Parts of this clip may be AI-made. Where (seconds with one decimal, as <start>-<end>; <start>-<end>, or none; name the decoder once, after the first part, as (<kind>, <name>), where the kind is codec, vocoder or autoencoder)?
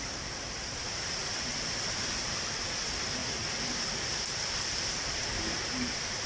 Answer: 0.0-1.2 (vocoder, BigVGAN v2); 2.1-3.2; 4.5-6.3